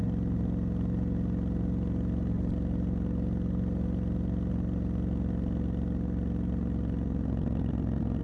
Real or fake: real